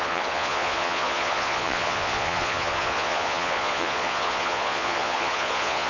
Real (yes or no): no